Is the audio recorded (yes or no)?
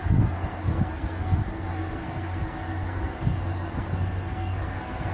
no